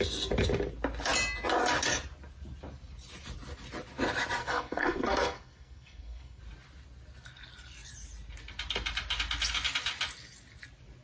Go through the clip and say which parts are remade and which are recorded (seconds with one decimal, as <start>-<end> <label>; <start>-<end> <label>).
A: 0.0-4.4 recorded; 4.4-6.4 remade; 6.4-11.0 recorded